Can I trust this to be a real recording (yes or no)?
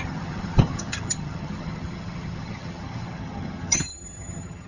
no